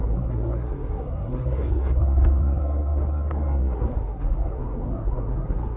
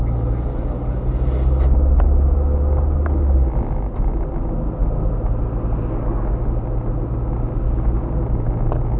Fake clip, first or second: first